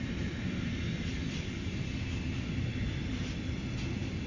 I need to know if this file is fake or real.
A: real